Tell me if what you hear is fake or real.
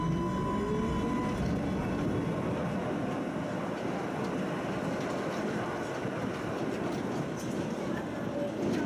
real